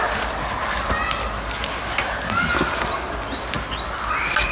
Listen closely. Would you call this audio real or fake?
real